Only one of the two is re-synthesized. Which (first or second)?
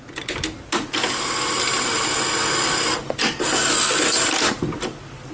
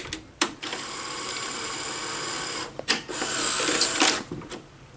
second